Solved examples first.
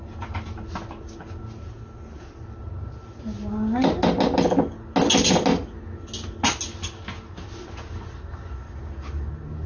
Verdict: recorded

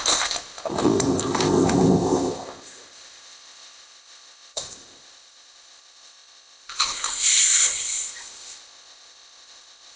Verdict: remade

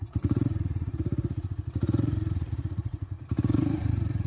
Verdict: remade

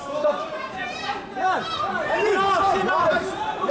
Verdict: remade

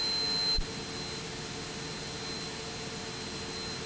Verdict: recorded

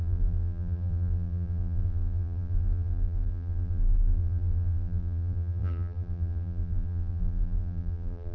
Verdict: remade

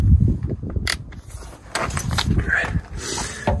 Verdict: recorded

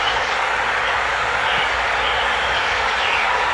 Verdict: remade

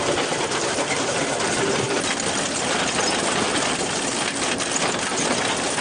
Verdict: recorded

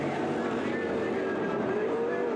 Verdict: remade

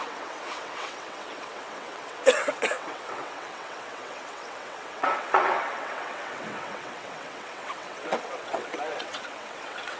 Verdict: remade